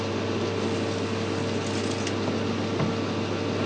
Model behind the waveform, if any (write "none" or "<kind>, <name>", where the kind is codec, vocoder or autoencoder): none